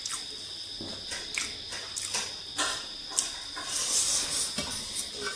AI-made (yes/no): no